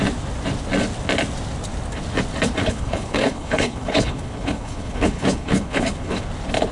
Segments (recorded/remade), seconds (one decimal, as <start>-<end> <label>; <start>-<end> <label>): 0.0-2.6 recorded; 2.6-6.2 remade; 6.2-6.7 recorded